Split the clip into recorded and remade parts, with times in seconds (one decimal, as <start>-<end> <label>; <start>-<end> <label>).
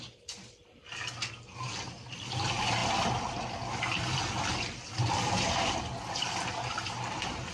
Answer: 0.0-7.5 recorded